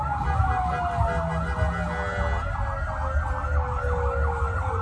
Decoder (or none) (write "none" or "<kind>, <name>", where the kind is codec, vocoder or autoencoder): none